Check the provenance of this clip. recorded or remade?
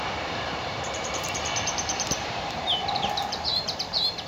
remade